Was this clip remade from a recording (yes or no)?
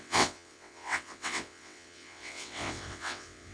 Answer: yes